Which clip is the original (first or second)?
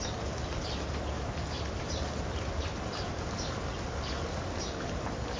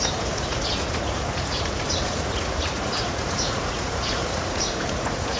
first